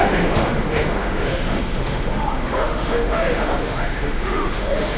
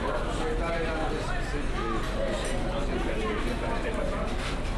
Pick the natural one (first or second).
second